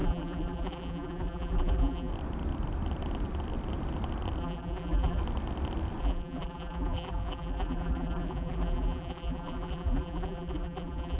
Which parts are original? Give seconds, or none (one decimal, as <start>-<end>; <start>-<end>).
2.1-4.4; 5.2-6.0